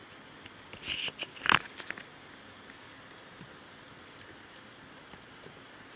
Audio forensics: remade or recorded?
recorded